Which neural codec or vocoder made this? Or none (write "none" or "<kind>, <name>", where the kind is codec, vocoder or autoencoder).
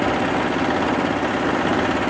none